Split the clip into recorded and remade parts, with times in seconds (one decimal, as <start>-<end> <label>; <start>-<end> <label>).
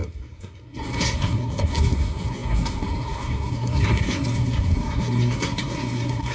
0.0-6.3 remade